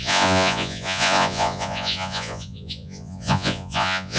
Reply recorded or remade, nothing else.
remade